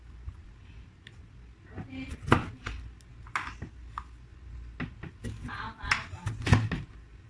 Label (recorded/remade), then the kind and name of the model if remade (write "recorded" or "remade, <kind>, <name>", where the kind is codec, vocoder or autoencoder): recorded